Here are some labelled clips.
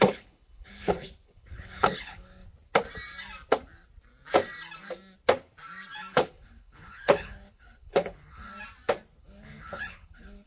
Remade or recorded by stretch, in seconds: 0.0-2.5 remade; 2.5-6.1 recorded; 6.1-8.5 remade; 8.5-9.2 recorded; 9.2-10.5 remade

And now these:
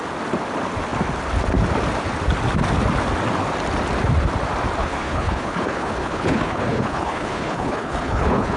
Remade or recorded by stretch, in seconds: 0.0-4.8 recorded; 4.8-8.6 remade

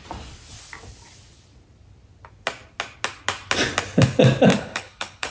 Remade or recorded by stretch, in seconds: 0.0-4.5 recorded; 4.5-5.3 remade